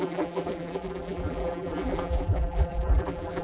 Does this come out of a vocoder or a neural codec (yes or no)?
yes